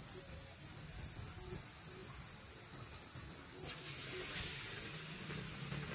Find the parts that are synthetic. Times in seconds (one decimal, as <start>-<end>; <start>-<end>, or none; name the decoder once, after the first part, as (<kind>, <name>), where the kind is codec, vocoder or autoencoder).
none